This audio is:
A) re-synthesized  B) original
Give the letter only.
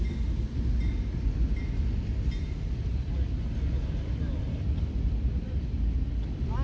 B